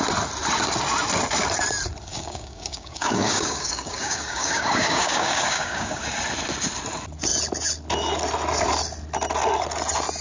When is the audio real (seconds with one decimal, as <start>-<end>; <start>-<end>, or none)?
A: 0.0-2.1; 6.0-10.2